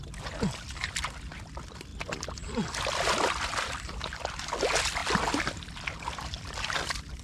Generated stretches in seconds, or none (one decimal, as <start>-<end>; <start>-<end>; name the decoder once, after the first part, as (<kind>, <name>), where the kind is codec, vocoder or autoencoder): 1.9-4.4 (vocoder, BigVGAN v2); 5.0-6.6